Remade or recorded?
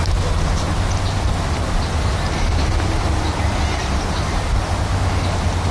recorded